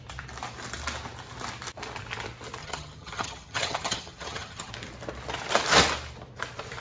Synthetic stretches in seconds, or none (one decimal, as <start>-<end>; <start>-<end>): 2.6-4.7